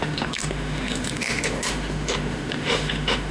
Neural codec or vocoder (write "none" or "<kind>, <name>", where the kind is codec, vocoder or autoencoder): autoencoder, DAC-VAE